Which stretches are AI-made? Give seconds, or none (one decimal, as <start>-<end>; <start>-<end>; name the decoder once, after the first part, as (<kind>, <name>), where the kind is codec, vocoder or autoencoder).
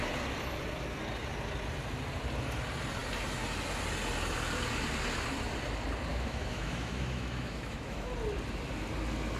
6.1-8.1 (autoencoder, DAC-VAE)